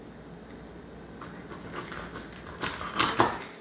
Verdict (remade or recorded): recorded